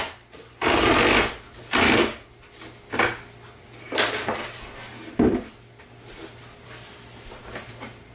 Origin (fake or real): real